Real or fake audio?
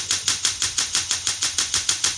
fake